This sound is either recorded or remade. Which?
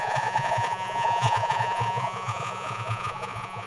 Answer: remade